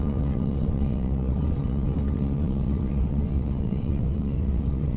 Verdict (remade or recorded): remade